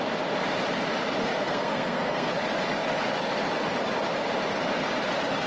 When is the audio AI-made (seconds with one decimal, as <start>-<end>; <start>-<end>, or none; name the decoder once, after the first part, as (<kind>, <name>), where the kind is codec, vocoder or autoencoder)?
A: 1.2-2.3 (codec, SNAC)